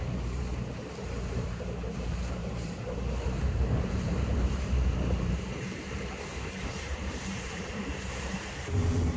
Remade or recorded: remade